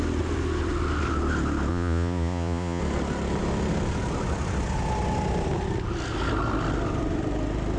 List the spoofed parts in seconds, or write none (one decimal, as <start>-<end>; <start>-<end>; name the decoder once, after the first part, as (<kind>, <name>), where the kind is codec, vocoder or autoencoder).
1.7-2.8 (vocoder, Vocos)